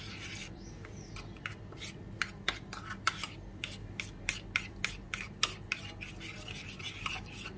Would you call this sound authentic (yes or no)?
yes